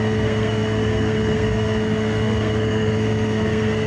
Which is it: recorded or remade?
remade